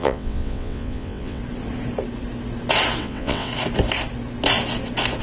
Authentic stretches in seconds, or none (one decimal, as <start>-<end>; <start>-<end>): 1.4-3.0; 3.5-5.2